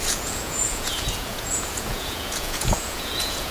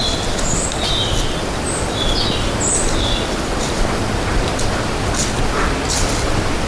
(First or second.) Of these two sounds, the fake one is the first